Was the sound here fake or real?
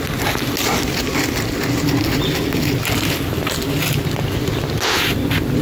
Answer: real